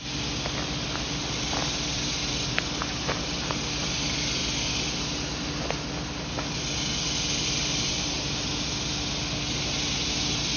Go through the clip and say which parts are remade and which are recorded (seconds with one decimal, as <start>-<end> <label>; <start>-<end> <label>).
0.0-10.6 recorded